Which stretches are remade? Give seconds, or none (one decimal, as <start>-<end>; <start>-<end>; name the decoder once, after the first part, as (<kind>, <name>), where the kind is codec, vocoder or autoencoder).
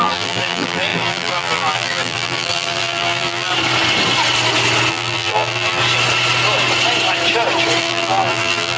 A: 0.0-3.5 (vocoder, BigVGAN v2); 4.9-5.8; 7.8-8.8